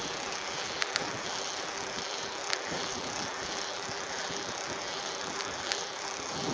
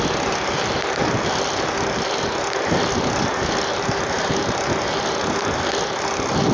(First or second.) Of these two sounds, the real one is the second